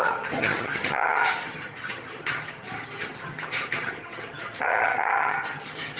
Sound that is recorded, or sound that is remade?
remade